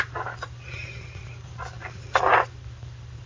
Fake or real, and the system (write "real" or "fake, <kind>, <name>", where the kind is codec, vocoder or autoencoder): fake, vocoder, BigVGAN v2